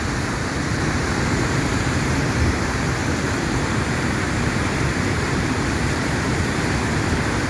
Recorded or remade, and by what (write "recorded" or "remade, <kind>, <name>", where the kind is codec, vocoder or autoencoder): remade, vocoder, BigVGAN v2